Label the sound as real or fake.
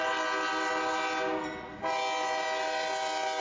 real